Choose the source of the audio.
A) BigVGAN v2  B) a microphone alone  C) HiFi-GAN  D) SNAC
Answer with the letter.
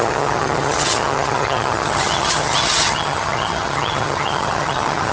C